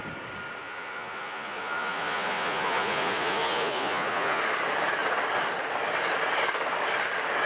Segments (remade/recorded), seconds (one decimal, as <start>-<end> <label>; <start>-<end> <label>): 0.0-0.6 recorded; 0.6-4.4 remade; 4.4-7.5 recorded